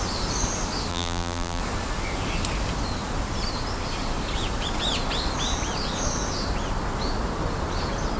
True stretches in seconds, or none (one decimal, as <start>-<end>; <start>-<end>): 0.0-0.9; 1.6-8.2